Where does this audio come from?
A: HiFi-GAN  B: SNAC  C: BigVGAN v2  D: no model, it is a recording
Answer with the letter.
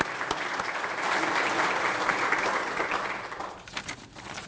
D